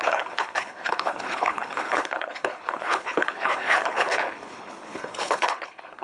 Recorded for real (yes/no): no